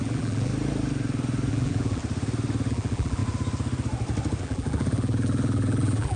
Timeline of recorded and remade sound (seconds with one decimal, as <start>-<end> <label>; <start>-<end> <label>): 0.0-0.5 remade; 0.5-1.5 recorded; 1.5-2.0 remade; 2.0-2.7 recorded; 2.7-3.2 remade; 3.2-4.4 recorded; 4.4-6.2 remade